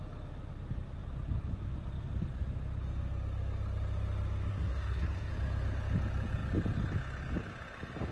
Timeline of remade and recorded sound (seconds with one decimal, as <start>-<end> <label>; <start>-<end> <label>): 0.0-4.5 recorded; 4.5-5.3 remade; 5.3-8.1 recorded